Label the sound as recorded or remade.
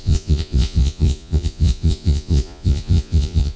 remade